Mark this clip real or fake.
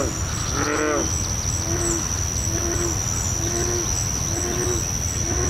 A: real